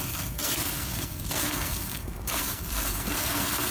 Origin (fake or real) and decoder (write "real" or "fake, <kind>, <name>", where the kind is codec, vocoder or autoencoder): fake, codec, SNAC